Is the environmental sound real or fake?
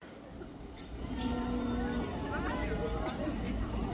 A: real